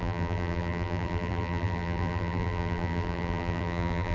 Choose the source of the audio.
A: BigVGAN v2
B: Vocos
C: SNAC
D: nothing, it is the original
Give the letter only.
A